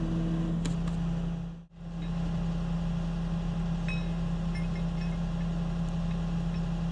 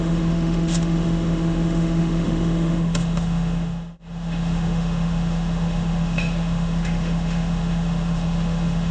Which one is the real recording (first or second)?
first